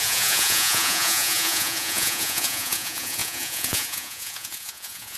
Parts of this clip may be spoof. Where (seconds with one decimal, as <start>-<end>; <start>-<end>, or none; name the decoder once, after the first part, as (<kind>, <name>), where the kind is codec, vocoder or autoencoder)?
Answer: 0.0-5.2 (vocoder, Vocos)